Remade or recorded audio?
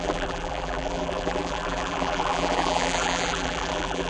remade